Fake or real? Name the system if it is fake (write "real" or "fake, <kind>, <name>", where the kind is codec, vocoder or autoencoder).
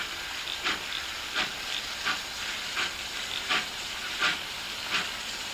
real